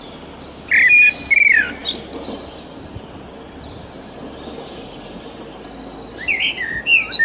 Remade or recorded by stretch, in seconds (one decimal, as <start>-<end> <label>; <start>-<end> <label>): 0.0-7.2 recorded